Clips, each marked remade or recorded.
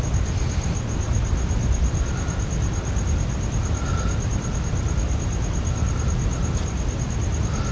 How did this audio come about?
remade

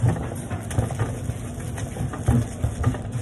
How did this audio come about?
recorded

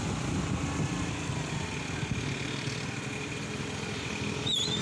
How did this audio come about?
recorded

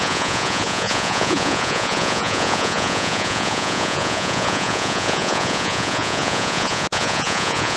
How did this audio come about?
remade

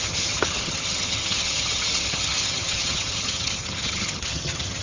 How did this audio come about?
remade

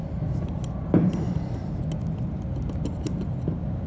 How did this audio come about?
recorded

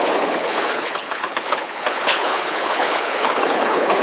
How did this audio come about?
remade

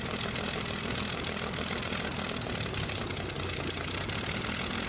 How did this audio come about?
recorded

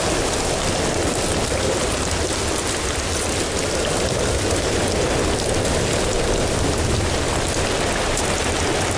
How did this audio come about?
recorded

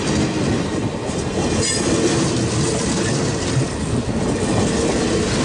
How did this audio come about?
recorded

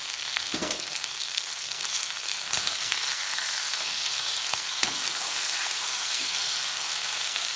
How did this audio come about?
remade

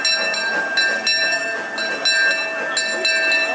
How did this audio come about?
recorded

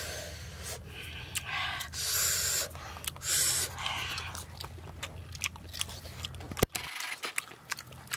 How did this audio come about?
recorded